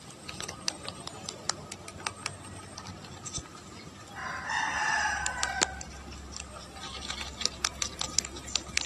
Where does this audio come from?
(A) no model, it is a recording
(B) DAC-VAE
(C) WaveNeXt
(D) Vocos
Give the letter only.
A